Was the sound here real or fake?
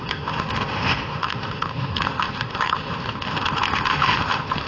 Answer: fake